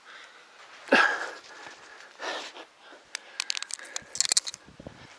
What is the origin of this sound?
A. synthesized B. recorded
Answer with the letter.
B